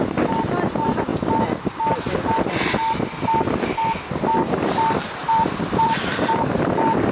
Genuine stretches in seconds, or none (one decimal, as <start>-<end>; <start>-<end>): 0.0-5.2; 6.4-7.1